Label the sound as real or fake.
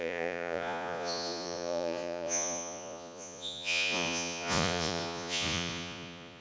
fake